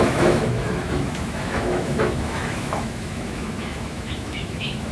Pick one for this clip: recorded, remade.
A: remade